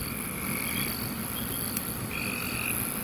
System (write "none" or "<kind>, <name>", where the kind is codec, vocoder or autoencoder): none